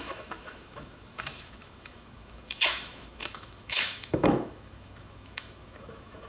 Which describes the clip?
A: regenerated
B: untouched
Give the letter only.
A